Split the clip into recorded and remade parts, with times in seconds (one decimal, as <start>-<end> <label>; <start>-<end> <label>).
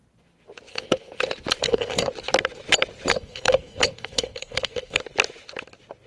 0.0-0.7 recorded; 0.7-1.2 remade; 1.2-1.6 recorded; 1.6-2.1 remade; 2.1-3.1 recorded; 3.1-5.0 remade; 5.0-6.1 recorded